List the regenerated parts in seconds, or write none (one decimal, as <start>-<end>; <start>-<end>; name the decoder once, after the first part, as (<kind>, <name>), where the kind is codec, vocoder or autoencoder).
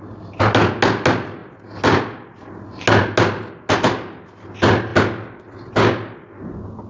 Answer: none